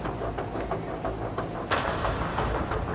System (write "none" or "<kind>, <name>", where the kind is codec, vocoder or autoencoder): none